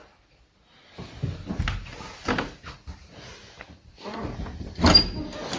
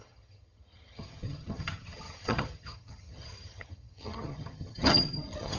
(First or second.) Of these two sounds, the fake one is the second